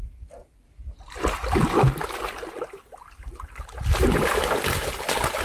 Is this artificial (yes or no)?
no